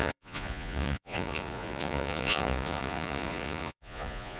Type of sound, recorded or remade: remade